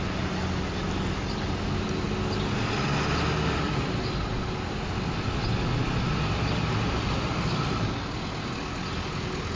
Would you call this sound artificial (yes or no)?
no